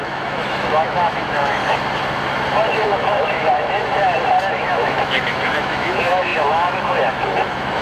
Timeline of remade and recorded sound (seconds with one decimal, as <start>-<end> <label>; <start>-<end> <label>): 0.0-1.6 remade; 1.6-2.7 recorded; 2.7-3.8 remade; 3.8-4.5 recorded; 4.5-7.8 remade